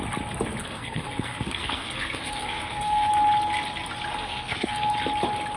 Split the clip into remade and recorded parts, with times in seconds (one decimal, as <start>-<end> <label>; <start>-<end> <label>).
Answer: 0.0-0.6 recorded; 0.6-3.1 remade; 3.1-4.1 recorded; 4.1-4.9 remade; 4.9-5.6 recorded